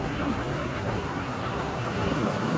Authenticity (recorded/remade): remade